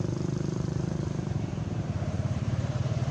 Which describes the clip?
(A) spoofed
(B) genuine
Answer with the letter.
A